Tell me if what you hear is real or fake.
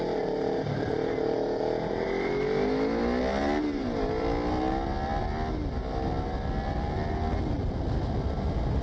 real